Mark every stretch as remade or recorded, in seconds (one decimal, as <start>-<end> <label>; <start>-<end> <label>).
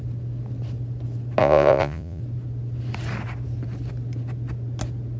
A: 0.0-1.4 recorded; 1.4-2.2 remade; 2.2-5.2 recorded